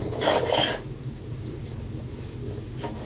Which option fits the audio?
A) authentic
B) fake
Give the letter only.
B